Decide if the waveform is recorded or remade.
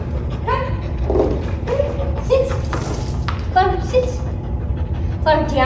recorded